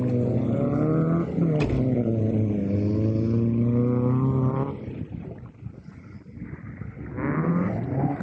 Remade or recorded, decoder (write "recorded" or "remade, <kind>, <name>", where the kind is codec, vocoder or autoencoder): recorded